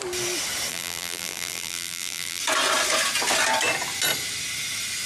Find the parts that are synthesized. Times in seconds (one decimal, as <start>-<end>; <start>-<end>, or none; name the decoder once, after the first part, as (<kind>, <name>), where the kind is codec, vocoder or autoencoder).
0.7-2.4 (vocoder, BigVGAN v2)